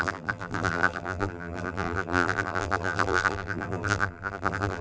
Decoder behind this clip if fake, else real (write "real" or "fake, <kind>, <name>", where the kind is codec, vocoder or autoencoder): fake, vocoder, BigVGAN v2